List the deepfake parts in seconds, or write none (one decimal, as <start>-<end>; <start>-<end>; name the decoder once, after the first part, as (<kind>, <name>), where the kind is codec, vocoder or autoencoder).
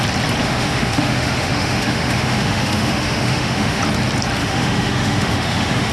0.4-3.8 (autoencoder, DAC-VAE); 4.4-5.9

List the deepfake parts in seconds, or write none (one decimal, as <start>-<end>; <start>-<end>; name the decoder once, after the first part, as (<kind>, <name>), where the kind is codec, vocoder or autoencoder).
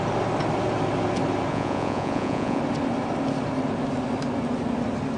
1.5-2.6 (vocoder, Vocos)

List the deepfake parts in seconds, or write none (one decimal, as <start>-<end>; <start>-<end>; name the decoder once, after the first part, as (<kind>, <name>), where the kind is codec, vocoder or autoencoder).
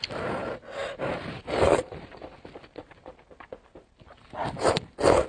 none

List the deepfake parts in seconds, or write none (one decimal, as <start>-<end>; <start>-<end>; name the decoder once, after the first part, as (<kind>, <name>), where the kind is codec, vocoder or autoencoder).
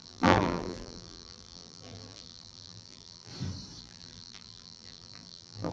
0.0-3.3 (vocoder, BigVGAN v2); 3.8-5.7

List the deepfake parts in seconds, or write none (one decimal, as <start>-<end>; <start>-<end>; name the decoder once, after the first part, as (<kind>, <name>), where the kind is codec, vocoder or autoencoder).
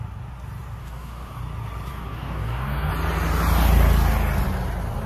0.8-1.4 (codec, DAC); 1.9-2.9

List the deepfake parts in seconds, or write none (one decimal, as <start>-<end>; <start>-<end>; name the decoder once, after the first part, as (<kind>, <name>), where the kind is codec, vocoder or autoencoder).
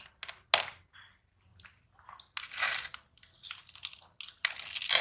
none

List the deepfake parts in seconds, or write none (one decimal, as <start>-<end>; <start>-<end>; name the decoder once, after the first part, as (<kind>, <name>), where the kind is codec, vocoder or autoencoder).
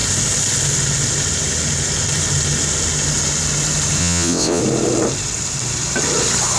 4.0-4.6 (vocoder, WaveNeXt)